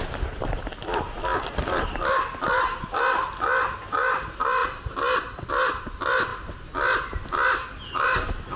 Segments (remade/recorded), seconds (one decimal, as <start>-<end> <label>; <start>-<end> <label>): 0.0-8.6 recorded